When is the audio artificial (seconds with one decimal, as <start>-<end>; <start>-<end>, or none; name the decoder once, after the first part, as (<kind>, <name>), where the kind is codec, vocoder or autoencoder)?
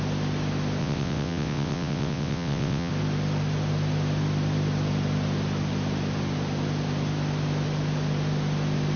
0.8-2.9 (vocoder, WaveNeXt)